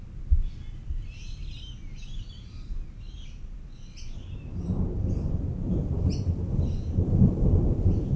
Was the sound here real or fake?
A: real